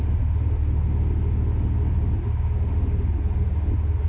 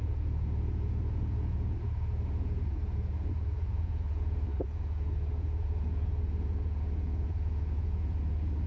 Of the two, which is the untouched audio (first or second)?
first